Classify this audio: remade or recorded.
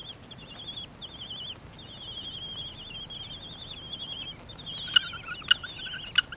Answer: recorded